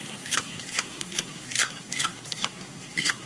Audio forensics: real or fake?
fake